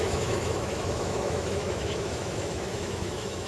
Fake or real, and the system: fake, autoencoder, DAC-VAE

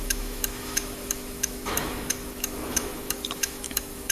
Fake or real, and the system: fake, autoencoder, DAC-VAE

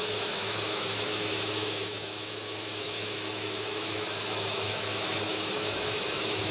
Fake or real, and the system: fake, autoencoder, DAC-VAE